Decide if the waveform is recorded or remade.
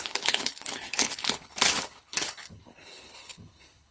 remade